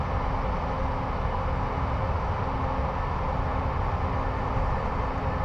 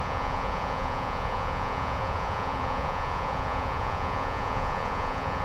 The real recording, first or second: first